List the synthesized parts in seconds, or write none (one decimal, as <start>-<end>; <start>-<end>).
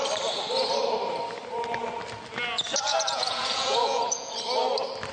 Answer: 2.9-4.3